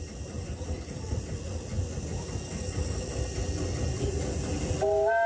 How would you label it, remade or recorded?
recorded